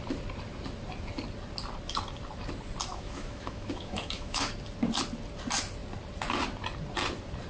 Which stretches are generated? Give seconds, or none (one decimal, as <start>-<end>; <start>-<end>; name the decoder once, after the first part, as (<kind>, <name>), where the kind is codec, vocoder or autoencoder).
2.9-4.5 (autoencoder, DAC-VAE)